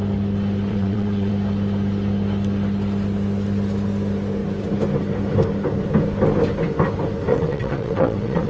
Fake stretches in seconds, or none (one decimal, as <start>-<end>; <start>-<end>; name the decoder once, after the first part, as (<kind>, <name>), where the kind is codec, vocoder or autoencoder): 0.7-1.3 (vocoder, WaveNeXt); 7.3-8.5